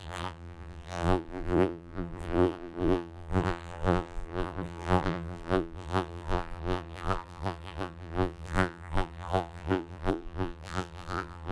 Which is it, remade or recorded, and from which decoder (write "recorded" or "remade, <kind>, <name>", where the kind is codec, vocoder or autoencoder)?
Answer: remade, vocoder, BigVGAN v2